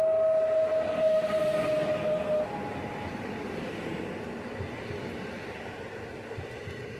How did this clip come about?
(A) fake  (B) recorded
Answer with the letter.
B